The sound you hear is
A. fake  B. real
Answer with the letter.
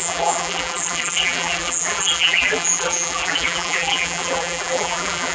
A